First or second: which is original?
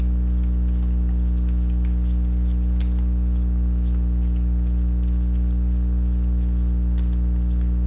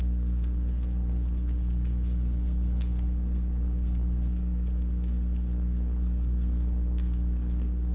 first